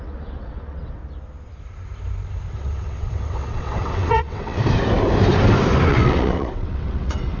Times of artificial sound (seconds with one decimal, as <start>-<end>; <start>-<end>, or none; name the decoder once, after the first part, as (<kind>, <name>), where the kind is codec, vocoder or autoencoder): 0.0-1.0 (vocoder, WaveNeXt); 2.5-4.6; 5.9-7.4